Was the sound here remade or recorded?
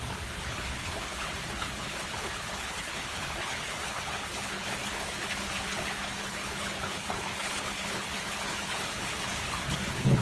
remade